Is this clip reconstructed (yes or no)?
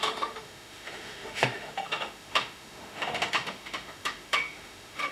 yes